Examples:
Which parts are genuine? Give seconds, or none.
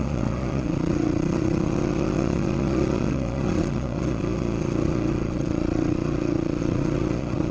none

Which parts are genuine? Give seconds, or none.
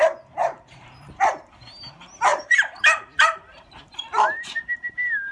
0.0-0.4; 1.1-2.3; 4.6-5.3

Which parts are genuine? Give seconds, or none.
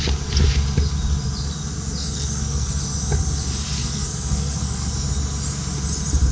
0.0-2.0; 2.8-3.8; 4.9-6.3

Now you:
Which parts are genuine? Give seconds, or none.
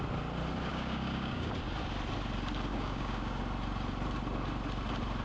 0.0-0.7; 1.5-2.7; 3.4-5.2